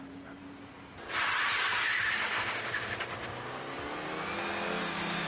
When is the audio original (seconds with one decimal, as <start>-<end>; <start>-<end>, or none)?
0.0-5.3